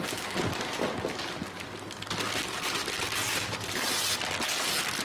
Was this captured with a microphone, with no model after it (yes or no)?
yes